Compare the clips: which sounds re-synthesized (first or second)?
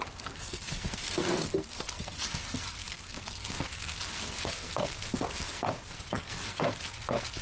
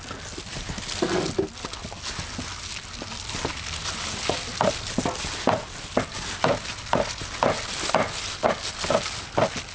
first